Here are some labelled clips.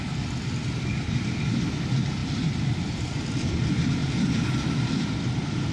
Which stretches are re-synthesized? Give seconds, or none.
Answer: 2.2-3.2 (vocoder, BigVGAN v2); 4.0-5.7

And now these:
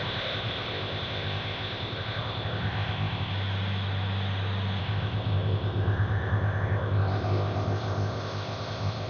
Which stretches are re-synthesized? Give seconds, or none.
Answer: 0.0-3.3 (codec, ZipCodec); 4.8-9.1

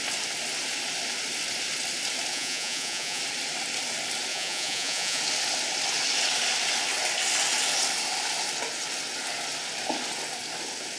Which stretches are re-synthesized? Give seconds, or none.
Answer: 2.3-3.2 (vocoder, Vocos); 4.3-5.2